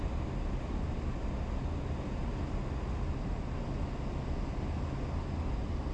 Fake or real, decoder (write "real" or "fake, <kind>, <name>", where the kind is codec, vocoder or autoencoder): real